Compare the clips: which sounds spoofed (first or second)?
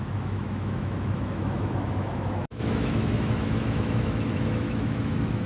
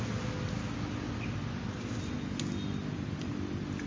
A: first